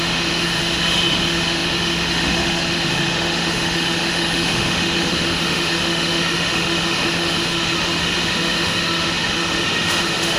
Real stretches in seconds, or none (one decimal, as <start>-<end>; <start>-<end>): none